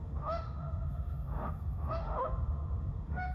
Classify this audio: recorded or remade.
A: remade